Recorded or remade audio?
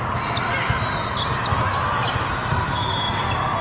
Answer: recorded